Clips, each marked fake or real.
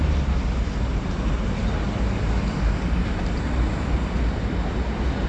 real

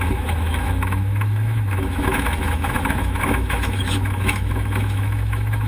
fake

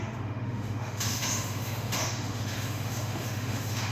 fake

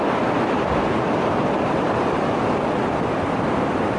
real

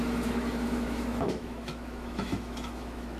fake